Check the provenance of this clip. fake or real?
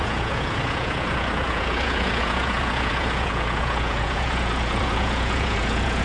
fake